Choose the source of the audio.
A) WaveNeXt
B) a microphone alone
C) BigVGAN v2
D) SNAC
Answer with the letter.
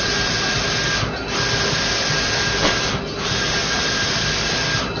B